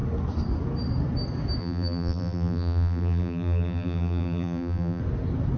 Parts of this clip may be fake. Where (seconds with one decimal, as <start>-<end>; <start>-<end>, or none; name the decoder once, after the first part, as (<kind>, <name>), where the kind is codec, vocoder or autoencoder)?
1.6-5.0 (vocoder, BigVGAN v2)